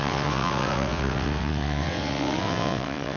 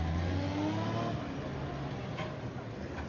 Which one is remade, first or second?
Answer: first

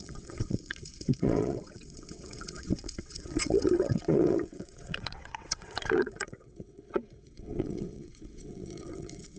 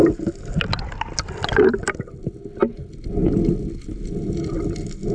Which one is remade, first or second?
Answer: first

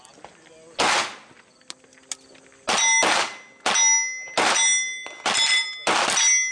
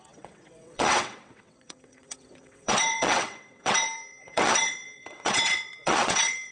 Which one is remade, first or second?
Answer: second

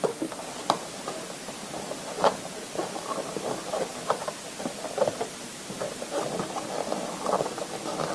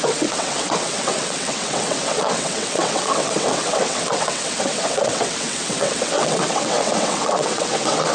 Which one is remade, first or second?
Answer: second